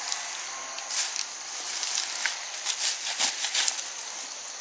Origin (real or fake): real